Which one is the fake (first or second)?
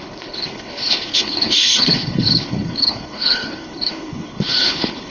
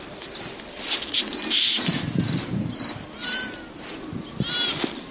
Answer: first